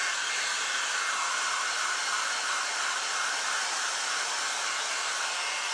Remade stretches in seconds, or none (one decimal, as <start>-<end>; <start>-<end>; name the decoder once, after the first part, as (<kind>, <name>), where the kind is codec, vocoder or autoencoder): 0.0-3.4 (vocoder, BigVGAN v2)